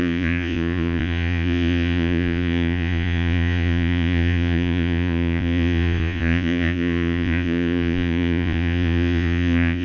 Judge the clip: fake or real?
fake